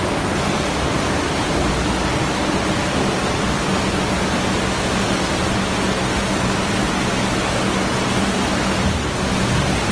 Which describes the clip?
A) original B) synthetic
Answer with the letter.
A